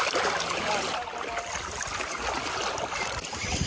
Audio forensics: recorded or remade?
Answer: recorded